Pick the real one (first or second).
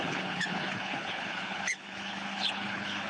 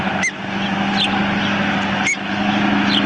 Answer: second